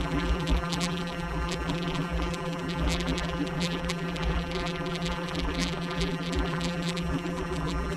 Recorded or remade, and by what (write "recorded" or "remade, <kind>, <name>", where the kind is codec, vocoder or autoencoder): remade, vocoder, BigVGAN v2